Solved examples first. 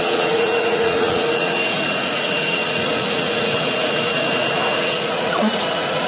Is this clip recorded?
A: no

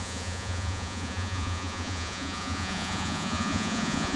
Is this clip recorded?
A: no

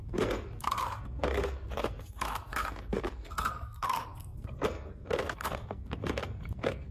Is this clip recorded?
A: no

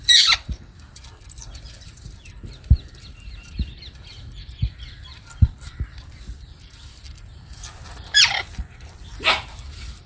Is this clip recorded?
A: no